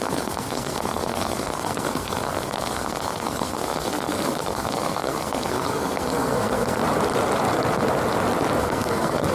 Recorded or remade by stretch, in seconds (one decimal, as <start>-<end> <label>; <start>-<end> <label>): 0.0-6.8 remade; 6.8-8.6 recorded; 8.6-9.3 remade